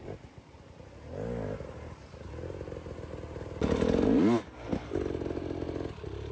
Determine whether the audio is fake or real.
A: real